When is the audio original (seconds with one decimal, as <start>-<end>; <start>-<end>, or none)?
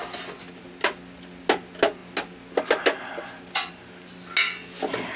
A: 0.0-5.2